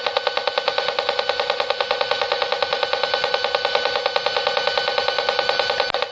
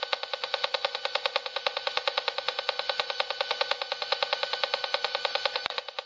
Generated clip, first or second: second